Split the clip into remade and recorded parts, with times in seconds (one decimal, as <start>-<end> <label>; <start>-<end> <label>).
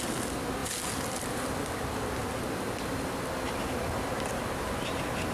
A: 0.0-0.6 recorded; 0.6-1.8 remade; 1.8-5.3 recorded